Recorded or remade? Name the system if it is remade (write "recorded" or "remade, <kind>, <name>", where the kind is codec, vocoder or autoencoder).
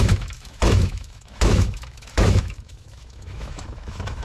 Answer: remade, autoencoder, DAC-VAE